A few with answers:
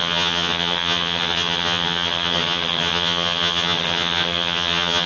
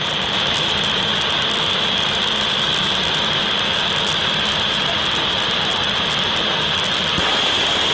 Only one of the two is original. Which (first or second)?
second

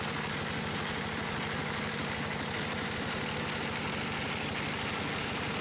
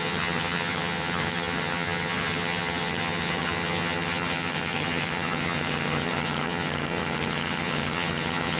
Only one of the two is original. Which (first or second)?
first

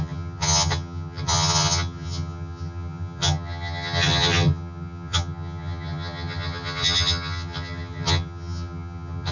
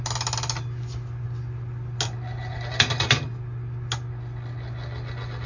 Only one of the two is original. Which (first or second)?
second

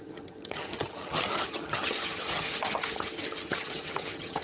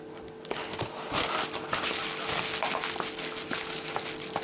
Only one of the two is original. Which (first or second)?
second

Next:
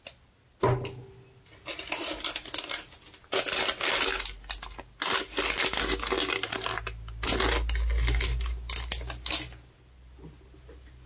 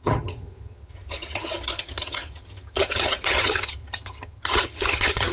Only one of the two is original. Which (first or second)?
first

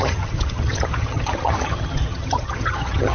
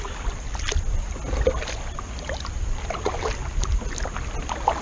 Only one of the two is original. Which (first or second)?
second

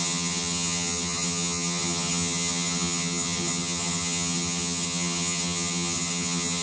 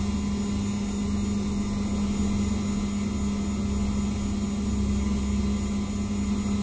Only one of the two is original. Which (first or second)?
second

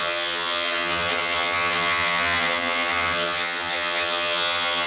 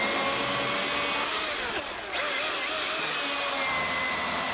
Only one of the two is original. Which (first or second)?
second